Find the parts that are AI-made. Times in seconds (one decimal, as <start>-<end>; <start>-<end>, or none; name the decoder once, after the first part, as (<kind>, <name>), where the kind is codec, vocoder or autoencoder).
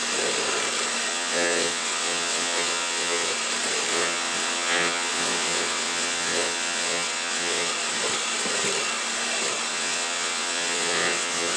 1.1-3.3 (vocoder, WaveNeXt); 3.9-7.7; 9.7-11.6